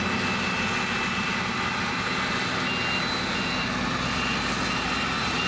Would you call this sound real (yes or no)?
yes